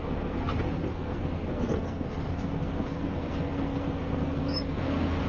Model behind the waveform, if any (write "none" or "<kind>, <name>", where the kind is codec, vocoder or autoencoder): codec, SNAC